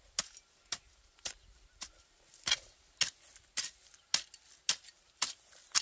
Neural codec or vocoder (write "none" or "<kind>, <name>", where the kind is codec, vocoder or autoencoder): none